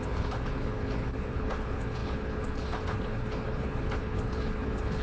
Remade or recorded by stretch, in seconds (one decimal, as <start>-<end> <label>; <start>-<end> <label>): 0.0-5.0 remade